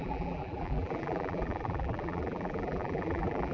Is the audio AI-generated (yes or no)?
yes